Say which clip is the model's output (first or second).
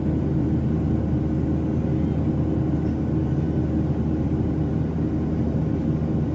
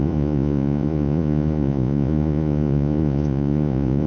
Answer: second